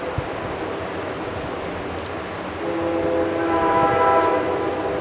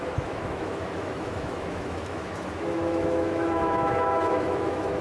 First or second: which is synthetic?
second